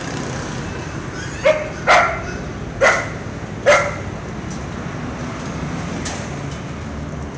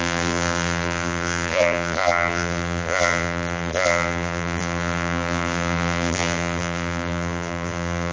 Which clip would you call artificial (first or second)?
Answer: second